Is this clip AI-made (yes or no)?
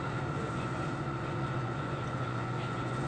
yes